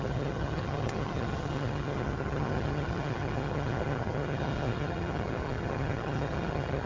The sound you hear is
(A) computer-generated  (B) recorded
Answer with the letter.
A